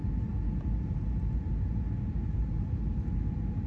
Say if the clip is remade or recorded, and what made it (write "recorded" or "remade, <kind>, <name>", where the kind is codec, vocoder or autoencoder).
recorded